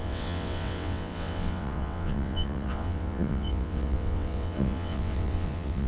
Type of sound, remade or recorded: remade